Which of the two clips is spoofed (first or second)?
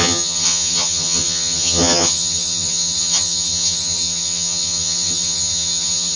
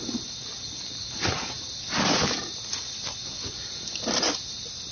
first